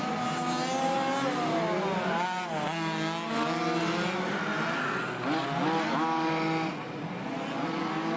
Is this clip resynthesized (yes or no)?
no